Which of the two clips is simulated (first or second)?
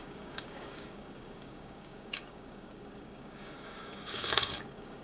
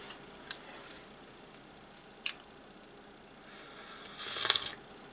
first